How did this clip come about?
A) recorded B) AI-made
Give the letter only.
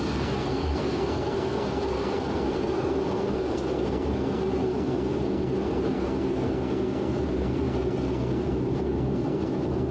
B